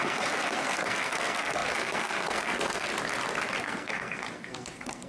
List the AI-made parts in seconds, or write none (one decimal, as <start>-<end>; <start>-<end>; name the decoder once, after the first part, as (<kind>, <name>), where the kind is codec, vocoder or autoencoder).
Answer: 0.0-2.9 (codec, SNAC); 3.6-5.1